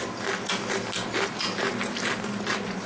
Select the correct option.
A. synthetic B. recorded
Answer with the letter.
B